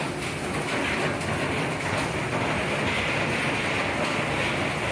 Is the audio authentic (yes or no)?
no